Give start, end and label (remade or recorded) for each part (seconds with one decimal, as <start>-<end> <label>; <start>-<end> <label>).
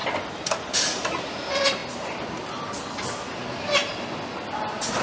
0.0-0.7 recorded; 0.7-1.8 remade; 1.8-5.0 recorded